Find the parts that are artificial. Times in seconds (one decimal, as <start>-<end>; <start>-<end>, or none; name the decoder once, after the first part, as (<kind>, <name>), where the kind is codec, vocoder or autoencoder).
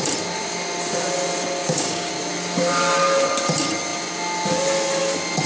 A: 1.6-2.1 (codec, DAC)